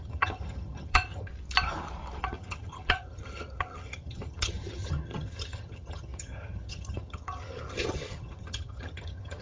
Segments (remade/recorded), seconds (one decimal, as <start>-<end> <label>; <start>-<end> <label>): 0.0-1.3 remade; 1.3-2.2 recorded; 2.2-9.4 remade